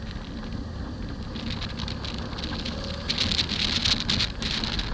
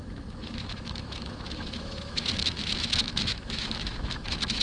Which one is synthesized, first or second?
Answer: second